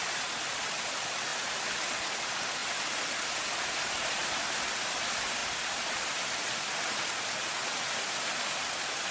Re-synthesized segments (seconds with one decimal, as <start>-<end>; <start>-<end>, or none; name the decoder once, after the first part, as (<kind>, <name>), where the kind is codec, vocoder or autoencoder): none